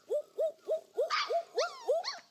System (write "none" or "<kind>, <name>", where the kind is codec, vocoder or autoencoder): none